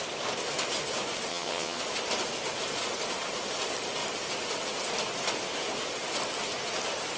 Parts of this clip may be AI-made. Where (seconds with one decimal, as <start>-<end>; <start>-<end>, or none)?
1.3-1.8